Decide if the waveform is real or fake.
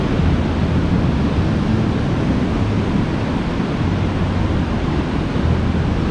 real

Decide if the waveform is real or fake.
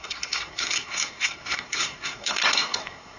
fake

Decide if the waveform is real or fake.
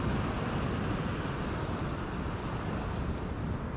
real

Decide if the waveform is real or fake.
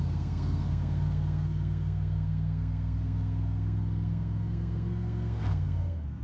fake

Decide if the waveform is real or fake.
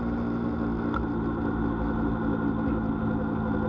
real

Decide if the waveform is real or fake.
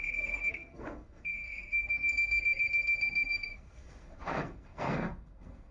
fake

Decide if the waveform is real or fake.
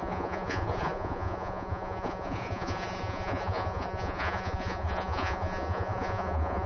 fake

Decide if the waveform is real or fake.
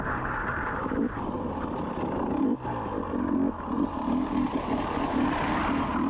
real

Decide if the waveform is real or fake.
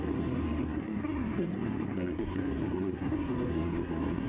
fake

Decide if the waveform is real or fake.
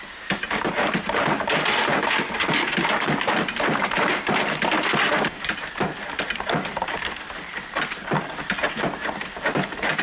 real